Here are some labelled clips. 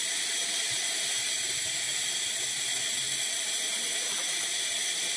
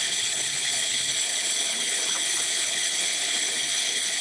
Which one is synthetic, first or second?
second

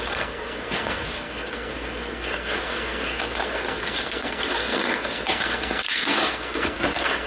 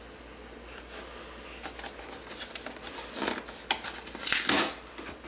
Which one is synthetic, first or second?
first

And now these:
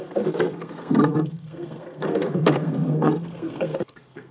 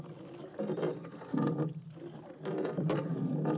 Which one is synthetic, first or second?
first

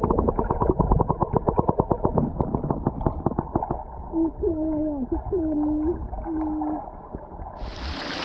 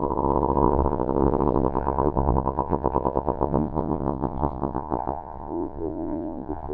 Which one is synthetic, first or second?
second